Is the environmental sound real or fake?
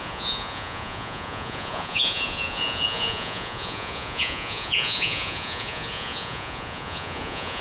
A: fake